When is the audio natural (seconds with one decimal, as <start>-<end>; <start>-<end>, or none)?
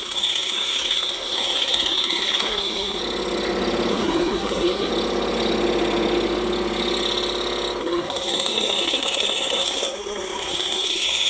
3.0-3.9; 4.9-7.8